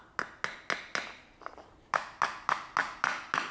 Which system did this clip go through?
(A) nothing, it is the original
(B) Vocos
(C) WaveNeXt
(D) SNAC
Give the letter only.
A